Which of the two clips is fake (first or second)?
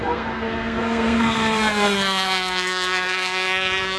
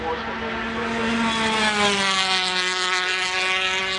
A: first